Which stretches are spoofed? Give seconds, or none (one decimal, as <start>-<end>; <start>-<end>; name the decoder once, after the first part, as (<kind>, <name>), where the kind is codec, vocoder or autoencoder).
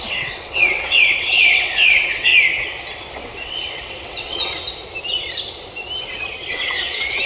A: 0.0-2.3 (vocoder, WaveNeXt); 3.2-4.5; 6.5-7.3